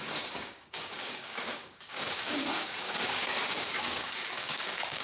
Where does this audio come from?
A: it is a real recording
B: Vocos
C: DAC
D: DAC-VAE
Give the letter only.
C